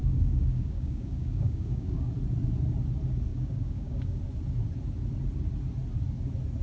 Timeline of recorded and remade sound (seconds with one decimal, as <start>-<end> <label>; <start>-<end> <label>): 0.0-2.1 remade; 2.1-3.3 recorded; 3.3-4.2 remade; 4.2-6.6 recorded